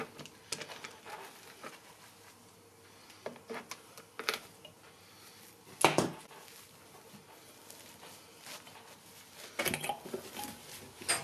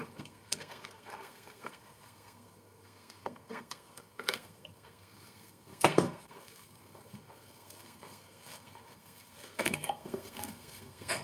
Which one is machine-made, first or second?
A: second